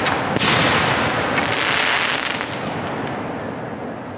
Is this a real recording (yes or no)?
yes